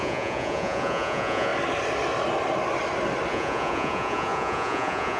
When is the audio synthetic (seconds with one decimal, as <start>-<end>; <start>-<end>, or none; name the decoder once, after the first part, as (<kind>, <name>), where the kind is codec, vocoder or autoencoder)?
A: 0.0-1.5 (vocoder, Vocos); 3.3-5.2